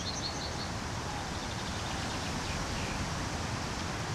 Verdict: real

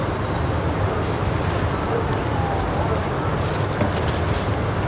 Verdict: real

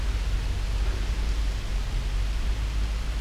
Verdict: real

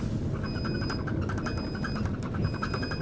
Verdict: real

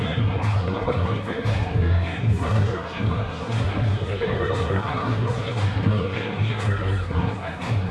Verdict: fake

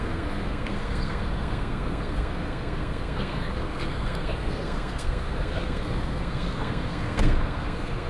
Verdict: fake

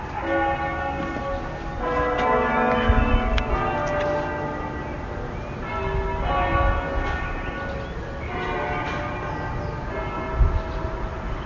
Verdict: real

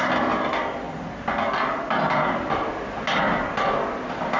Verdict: real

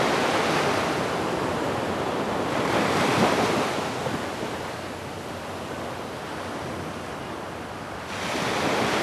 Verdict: real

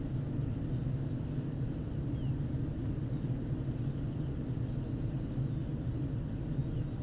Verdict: real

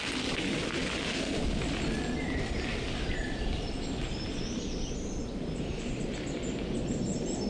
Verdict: real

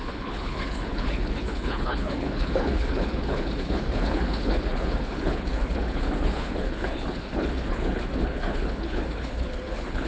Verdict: fake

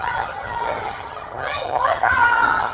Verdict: fake